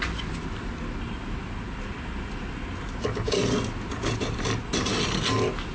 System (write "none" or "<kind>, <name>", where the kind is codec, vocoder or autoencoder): none